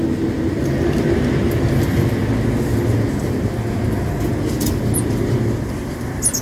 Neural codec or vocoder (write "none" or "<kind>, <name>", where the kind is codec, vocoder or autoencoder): none